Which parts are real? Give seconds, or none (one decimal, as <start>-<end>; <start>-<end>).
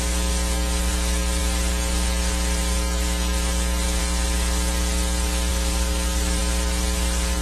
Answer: 0.0-5.5; 6.4-7.4